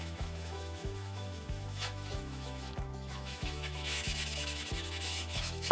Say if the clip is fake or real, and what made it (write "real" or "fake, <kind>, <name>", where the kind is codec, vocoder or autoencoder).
fake, autoencoder, DAC-VAE